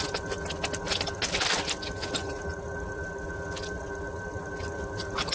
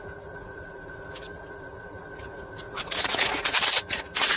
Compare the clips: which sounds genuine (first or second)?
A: first